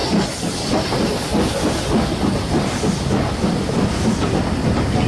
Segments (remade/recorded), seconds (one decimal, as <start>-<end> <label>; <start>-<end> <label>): 0.0-5.1 recorded